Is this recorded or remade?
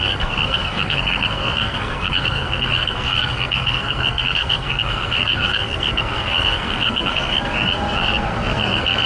remade